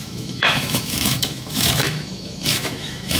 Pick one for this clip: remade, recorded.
remade